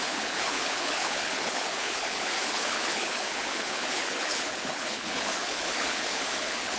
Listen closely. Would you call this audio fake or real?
fake